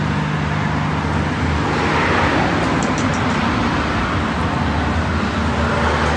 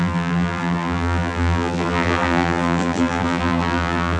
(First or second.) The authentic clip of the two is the first